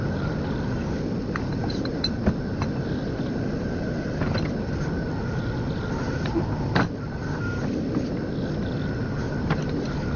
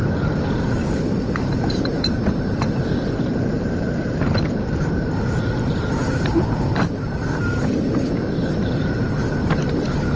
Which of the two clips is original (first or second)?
first